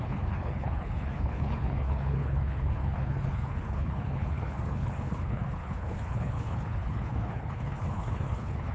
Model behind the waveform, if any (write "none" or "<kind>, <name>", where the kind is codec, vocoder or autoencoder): codec, HILCodec